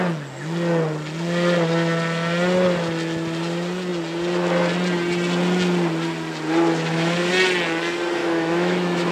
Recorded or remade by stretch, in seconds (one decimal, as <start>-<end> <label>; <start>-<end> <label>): 0.0-8.2 recorded; 8.2-9.1 remade